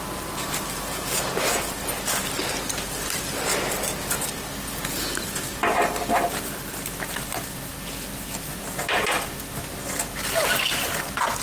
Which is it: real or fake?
real